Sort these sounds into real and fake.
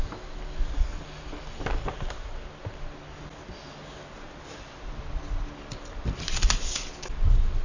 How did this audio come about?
real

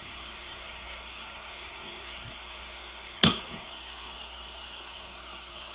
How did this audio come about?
fake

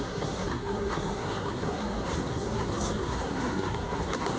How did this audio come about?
fake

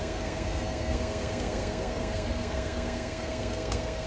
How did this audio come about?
fake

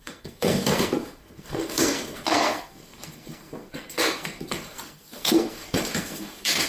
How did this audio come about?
fake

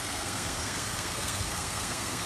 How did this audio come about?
fake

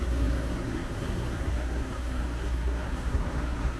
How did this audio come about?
fake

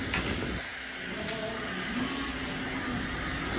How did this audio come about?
real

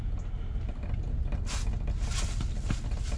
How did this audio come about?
real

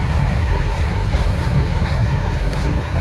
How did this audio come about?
fake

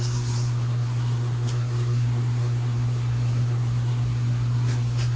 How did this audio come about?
fake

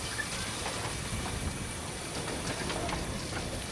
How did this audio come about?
real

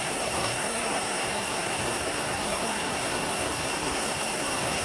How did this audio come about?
fake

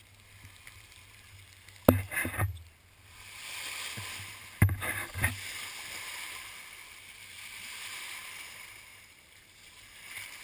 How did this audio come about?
real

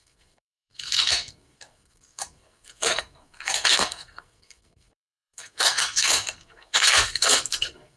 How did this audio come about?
fake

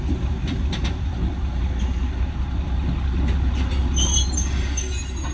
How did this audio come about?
real